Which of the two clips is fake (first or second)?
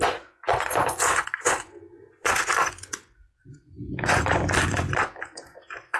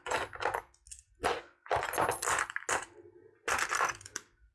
first